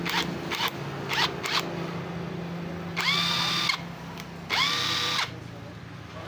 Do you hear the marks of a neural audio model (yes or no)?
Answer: no